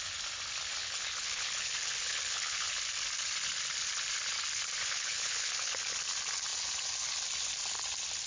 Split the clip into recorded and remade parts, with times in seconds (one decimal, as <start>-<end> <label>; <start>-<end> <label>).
0.0-0.8 recorded; 0.8-2.7 remade; 2.7-4.8 recorded; 4.8-5.8 remade; 5.8-8.3 recorded